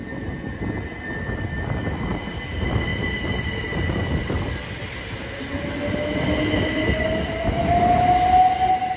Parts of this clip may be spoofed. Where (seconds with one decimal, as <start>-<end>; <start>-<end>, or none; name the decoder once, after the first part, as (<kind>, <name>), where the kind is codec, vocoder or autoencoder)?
none